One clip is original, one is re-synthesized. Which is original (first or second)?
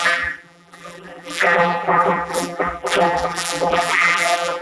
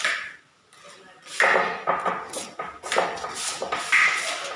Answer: second